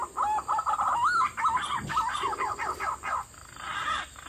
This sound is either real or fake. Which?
real